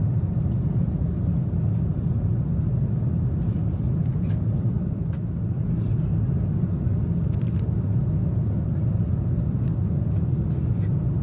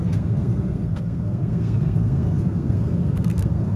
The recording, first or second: first